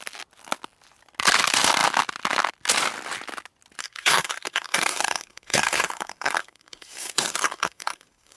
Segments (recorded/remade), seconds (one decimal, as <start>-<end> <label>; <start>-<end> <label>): 0.0-3.8 recorded; 3.8-8.4 remade